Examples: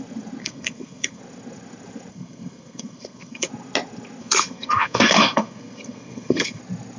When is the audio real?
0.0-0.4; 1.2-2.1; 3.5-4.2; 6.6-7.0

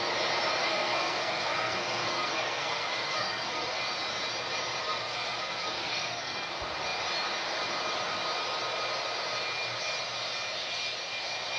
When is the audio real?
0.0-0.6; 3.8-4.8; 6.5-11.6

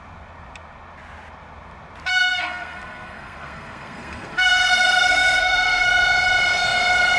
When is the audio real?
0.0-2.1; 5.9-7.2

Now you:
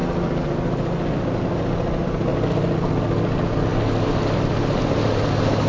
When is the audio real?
0.0-5.7

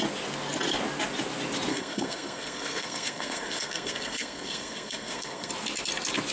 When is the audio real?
0.0-1.7; 5.5-6.3

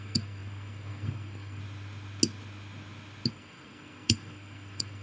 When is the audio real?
1.6-3.3